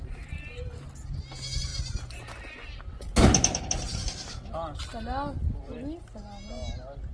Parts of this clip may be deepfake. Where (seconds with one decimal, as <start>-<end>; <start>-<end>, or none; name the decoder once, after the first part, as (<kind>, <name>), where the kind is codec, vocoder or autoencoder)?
3.9-4.4 (codec, DAC)